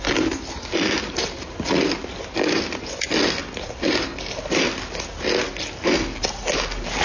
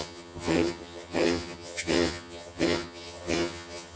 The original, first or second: first